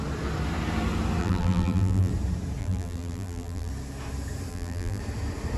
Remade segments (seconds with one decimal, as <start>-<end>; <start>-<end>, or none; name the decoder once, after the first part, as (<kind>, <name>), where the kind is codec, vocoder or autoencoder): 1.2-2.1 (vocoder, BigVGAN v2); 2.6-3.7; 4.5-5.0